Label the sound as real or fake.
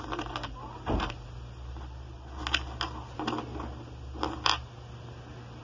real